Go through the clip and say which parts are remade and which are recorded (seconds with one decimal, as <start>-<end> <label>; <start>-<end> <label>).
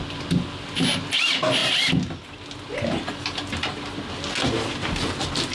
0.0-5.5 recorded